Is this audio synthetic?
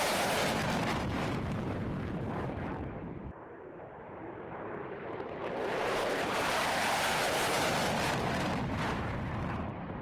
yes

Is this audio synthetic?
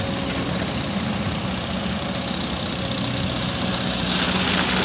no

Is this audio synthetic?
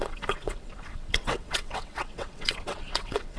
yes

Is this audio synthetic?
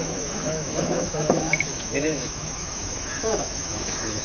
yes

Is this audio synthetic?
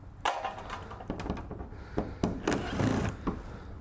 no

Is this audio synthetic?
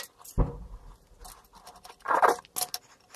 no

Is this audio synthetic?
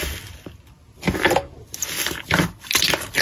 no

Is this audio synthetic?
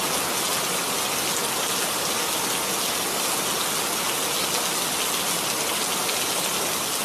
no